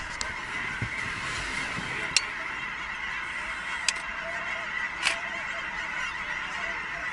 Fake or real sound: real